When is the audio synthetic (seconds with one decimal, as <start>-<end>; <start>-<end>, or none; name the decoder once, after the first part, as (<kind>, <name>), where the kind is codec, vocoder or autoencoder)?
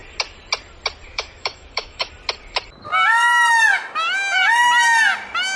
1.1-2.1 (autoencoder, DAC-VAE)